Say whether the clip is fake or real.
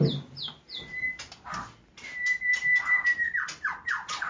real